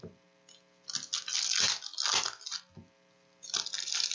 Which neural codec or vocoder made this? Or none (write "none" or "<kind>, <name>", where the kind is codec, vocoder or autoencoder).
none